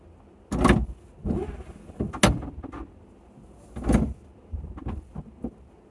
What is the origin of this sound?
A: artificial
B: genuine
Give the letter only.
B